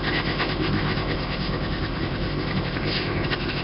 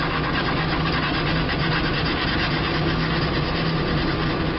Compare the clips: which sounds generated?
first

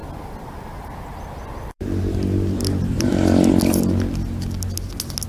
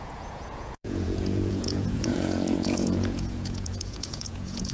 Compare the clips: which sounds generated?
second